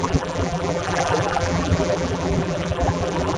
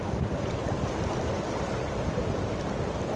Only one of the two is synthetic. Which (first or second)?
first